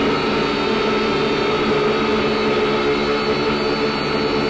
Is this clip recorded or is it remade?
recorded